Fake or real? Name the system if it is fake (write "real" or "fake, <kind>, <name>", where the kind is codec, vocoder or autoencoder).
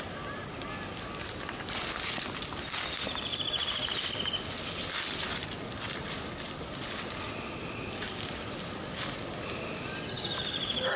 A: real